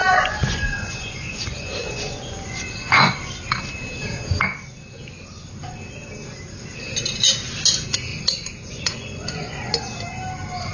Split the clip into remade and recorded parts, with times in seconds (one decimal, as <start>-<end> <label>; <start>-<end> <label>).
0.0-3.4 remade; 3.4-8.1 recorded; 8.1-9.7 remade; 9.7-10.7 recorded